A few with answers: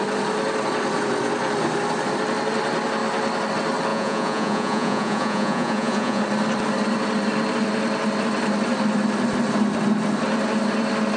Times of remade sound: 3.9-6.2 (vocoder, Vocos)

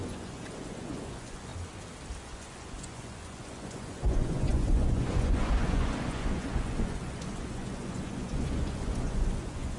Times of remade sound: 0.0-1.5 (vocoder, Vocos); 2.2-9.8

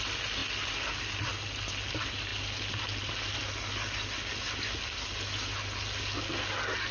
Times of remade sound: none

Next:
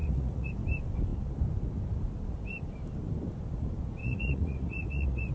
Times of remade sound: 0.0-0.5 (vocoder, Vocos); 4.0-5.3

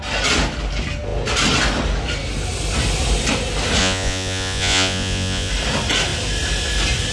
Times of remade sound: 3.8-5.5 (vocoder, Vocos)